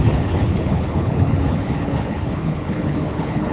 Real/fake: fake